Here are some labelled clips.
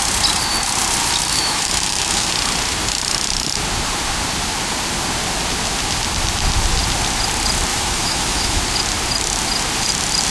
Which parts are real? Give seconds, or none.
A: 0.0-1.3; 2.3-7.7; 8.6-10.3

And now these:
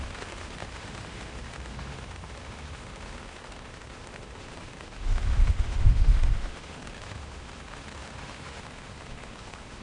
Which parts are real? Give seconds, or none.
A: none

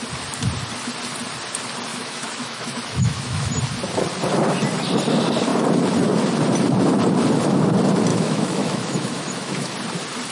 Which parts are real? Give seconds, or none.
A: 0.0-1.9; 3.5-8.1; 9.7-10.3

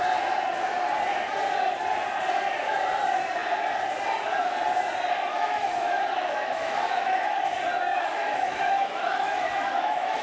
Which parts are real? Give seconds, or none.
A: 0.0-5.3; 7.4-7.9

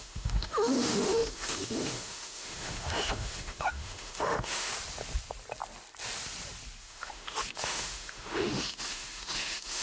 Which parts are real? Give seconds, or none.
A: 4.7-6.8